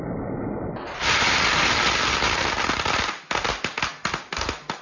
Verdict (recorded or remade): recorded